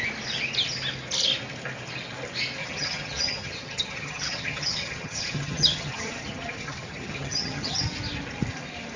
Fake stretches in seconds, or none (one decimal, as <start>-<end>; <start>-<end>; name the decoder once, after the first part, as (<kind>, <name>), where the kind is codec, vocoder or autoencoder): 2.6-7.8 (vocoder, HiFi-GAN)